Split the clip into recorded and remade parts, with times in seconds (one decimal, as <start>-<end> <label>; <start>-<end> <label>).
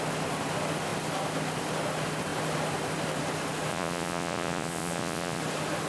0.0-3.7 recorded; 3.7-5.4 remade; 5.4-5.9 recorded